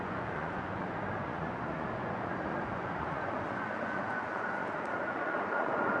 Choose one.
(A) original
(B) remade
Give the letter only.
B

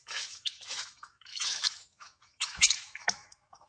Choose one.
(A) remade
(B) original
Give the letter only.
A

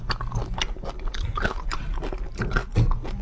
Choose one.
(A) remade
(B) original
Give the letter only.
B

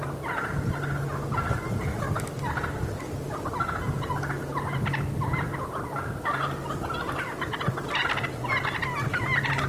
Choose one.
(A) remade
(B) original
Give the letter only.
B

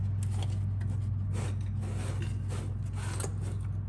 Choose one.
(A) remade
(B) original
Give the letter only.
B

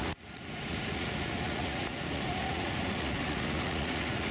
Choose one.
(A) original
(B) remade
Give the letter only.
B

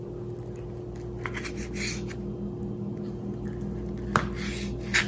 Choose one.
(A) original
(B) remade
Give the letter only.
A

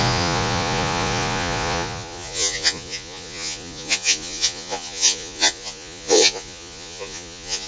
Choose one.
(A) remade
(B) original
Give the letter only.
A